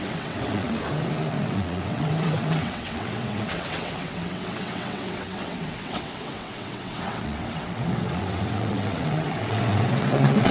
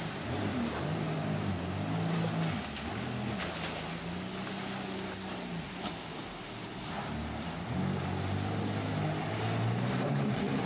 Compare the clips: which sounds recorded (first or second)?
second